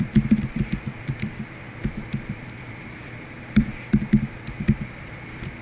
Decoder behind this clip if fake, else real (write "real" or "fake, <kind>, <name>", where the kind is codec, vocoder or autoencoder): fake, vocoder, BigVGAN v2